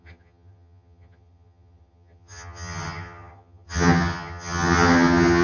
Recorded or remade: remade